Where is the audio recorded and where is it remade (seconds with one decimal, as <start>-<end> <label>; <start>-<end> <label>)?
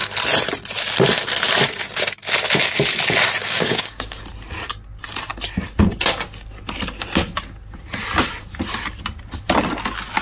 0.0-3.4 recorded; 3.4-4.2 remade; 4.2-10.2 recorded